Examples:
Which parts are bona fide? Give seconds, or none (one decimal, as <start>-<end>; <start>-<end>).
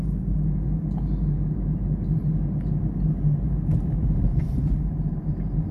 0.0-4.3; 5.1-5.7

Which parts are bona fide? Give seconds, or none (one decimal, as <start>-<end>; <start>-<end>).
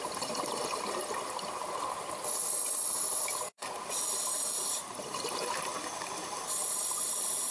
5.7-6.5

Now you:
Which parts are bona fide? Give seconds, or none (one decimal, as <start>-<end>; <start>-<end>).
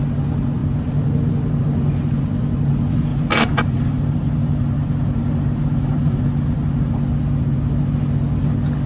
0.0-3.1; 6.9-8.9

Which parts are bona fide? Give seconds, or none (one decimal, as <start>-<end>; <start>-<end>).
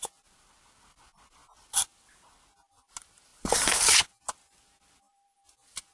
0.0-5.9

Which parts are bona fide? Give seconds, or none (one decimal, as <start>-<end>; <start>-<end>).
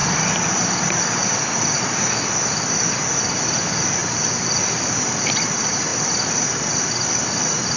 1.0-4.0; 5.3-5.9; 6.8-7.8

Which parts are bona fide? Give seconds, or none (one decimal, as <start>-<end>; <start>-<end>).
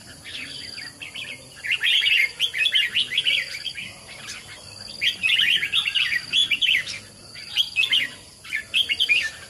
0.0-6.4; 7.5-9.5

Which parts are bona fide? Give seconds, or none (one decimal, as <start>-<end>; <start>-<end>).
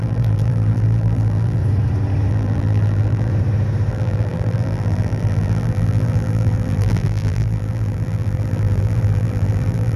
1.6-2.3; 3.3-3.9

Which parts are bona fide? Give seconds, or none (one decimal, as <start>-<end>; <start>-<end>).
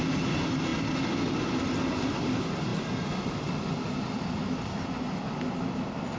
0.0-6.2